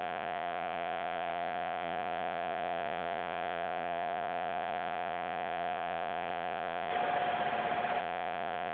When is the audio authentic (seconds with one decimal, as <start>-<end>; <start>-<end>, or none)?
6.9-8.0